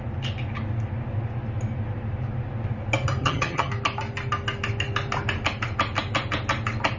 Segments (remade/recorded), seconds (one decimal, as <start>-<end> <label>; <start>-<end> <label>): 0.0-3.2 recorded; 3.2-3.7 remade; 3.7-7.0 recorded